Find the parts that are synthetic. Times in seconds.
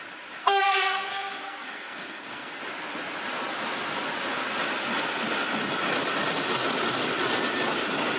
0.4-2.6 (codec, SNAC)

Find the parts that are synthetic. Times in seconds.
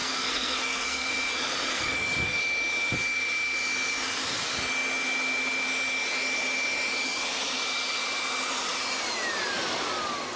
0.0-1.1 (codec, SNAC); 1.7-2.4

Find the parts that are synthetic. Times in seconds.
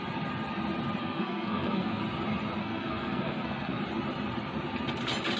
1.0-2.0 (codec, SNAC); 2.6-3.8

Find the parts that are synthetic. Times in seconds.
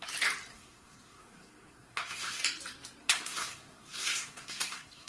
0.5-2.4 (codec, SNAC); 3.0-5.1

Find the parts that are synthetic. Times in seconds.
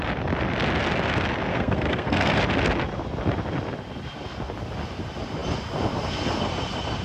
1.5-2.4 (codec, SNAC)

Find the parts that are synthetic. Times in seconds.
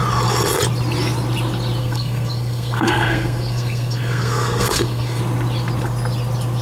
1.8-5.2 (codec, SNAC)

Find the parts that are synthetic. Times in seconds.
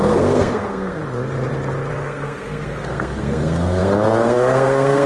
0.0-1.0 (codec, SNAC); 1.9-5.1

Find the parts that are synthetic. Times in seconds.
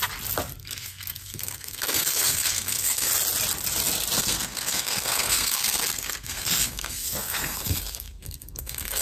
0.6-3.1 (codec, SNAC); 4.2-9.0